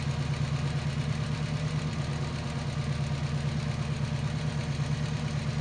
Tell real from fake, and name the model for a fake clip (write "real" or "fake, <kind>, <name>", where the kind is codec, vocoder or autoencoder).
real